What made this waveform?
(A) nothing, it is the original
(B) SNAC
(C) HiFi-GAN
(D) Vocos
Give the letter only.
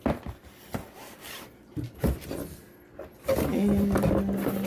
A